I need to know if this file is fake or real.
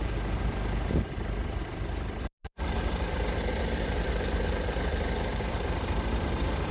fake